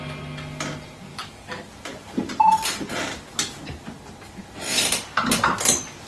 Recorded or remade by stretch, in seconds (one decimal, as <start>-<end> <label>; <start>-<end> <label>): 0.0-1.1 recorded; 1.1-1.7 remade; 1.7-6.1 recorded